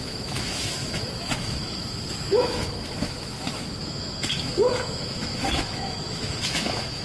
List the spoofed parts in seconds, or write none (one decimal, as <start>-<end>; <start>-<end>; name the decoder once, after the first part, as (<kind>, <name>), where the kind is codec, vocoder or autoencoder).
0.0-7.0 (autoencoder, DAC-VAE)